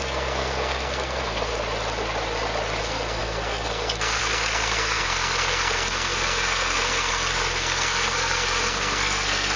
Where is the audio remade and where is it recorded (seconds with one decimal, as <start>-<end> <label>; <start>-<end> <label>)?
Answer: 0.0-1.5 remade; 1.5-2.8 recorded; 2.8-9.6 remade